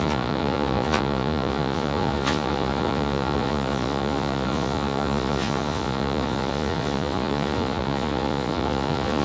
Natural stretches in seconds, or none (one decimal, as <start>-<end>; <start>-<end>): none